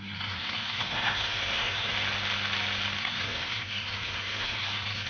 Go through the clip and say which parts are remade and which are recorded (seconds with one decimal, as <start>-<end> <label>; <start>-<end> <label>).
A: 0.0-1.9 remade; 1.9-3.0 recorded; 3.0-5.1 remade